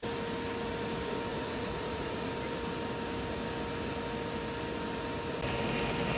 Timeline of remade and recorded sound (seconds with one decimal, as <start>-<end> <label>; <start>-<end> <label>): 0.0-1.3 recorded; 1.3-2.3 remade; 2.3-6.2 recorded